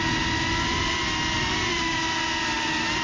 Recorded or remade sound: recorded